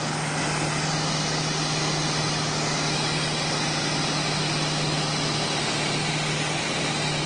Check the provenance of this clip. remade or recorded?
recorded